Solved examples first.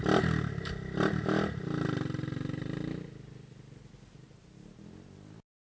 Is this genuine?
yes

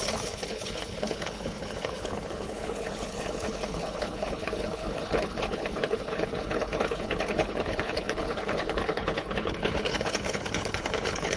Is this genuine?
no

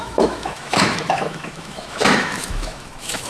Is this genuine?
no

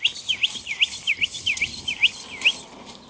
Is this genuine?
yes